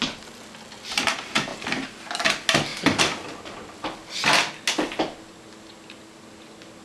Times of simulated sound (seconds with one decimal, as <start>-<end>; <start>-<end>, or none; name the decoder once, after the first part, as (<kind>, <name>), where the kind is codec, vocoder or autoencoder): none